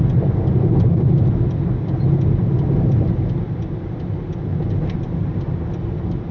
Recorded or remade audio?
recorded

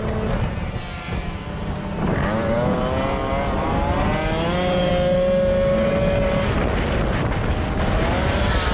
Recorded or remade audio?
recorded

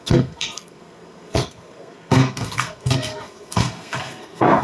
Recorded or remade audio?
remade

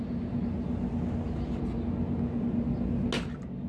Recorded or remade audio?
recorded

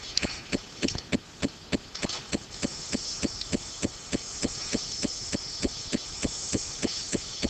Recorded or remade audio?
recorded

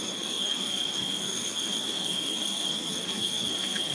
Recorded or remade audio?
remade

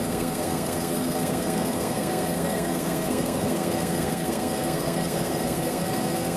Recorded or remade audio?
remade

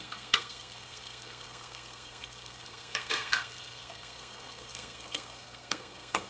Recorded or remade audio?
remade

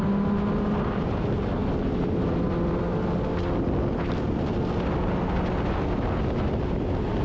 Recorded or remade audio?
recorded